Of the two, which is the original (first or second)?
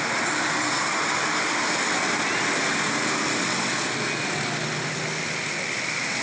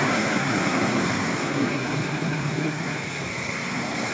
first